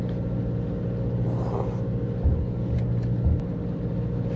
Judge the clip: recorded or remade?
recorded